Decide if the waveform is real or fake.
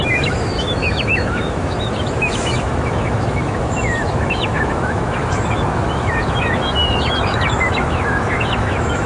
fake